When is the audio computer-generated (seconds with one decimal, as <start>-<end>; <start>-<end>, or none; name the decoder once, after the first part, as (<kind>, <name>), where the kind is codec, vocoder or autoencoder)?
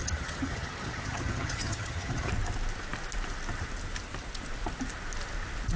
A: 0.0-2.3 (vocoder, HiFi-GAN)